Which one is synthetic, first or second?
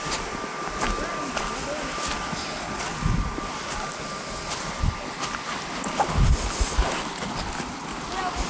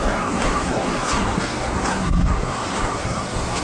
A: second